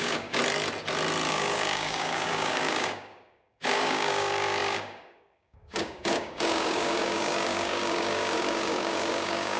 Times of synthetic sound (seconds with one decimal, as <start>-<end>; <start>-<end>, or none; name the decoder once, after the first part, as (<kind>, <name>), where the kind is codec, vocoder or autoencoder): 0.0-0.4 (codec, DAC); 1.3-9.6